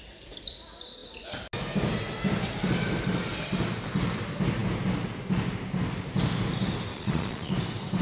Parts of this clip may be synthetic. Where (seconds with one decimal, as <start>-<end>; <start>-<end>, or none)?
6.9-7.5